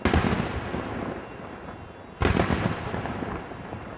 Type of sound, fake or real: real